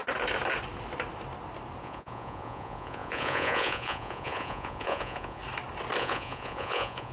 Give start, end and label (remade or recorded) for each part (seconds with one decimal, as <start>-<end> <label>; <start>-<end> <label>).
0.0-1.8 recorded; 1.8-5.4 remade; 5.4-6.0 recorded; 6.0-7.1 remade